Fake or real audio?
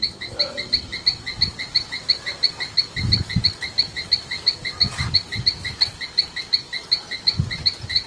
real